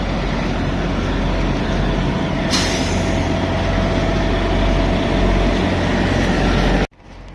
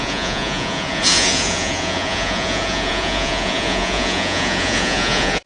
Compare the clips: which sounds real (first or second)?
first